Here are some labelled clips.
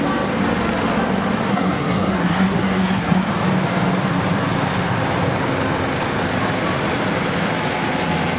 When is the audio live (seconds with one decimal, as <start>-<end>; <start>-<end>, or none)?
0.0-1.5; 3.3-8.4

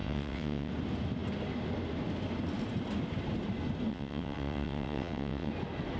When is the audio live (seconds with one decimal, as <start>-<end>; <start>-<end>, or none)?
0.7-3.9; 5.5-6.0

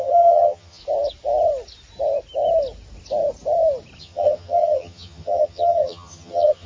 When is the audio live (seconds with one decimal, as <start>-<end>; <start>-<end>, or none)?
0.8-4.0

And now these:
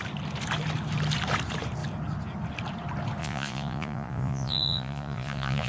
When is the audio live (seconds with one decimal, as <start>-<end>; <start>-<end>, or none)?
0.0-3.2

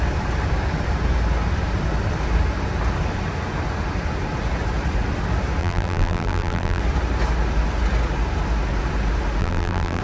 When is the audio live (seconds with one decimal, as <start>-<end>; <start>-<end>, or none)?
0.0-5.6; 6.8-9.4

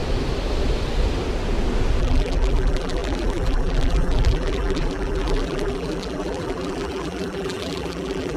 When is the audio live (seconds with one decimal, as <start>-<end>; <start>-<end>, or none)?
0.0-2.0